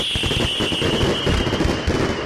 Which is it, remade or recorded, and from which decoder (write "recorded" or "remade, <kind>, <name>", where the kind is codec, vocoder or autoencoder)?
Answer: recorded